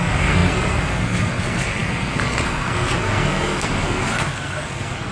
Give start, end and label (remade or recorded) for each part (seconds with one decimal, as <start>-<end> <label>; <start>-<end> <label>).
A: 0.0-5.1 remade